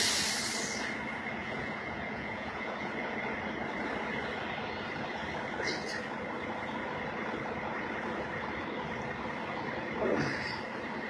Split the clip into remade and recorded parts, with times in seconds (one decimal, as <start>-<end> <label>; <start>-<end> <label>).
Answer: 0.0-1.4 recorded; 1.4-2.9 remade; 2.9-11.1 recorded